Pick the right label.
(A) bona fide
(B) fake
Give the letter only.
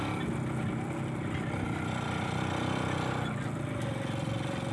A